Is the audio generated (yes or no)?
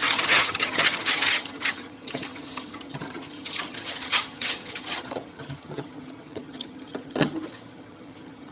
yes